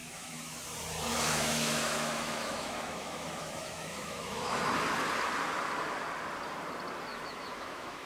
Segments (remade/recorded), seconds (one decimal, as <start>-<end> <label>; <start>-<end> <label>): 0.0-0.6 remade; 0.6-1.1 recorded; 1.1-4.7 remade; 4.7-7.1 recorded; 7.1-8.1 remade

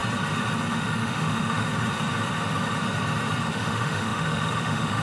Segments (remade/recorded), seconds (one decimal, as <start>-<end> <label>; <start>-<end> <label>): 0.0-0.7 recorded; 0.7-1.7 remade; 1.7-3.5 recorded; 3.5-5.0 remade

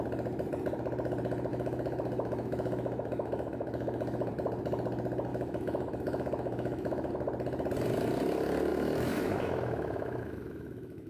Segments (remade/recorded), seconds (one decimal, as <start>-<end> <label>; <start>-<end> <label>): 0.0-1.5 recorded; 1.5-4.3 remade; 4.3-5.3 recorded; 5.3-7.1 remade; 7.1-8.7 recorded; 8.7-11.1 remade

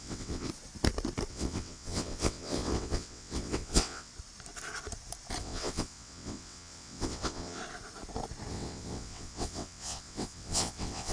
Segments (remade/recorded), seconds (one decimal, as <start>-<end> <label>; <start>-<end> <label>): 0.0-0.5 remade; 0.5-1.3 recorded; 1.3-4.1 remade; 4.1-5.4 recorded; 5.4-7.6 remade; 7.6-8.5 recorded; 8.5-11.1 remade

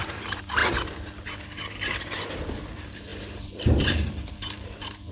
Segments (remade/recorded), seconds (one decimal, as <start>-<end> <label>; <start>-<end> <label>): 0.0-0.6 remade; 0.6-2.6 recorded; 2.6-5.1 remade